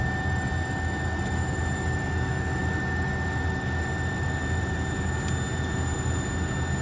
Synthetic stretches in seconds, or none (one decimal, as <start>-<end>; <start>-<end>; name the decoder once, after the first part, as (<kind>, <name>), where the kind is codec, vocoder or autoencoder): none